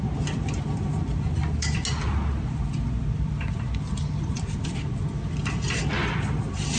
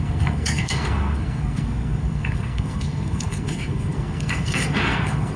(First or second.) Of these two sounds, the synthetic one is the second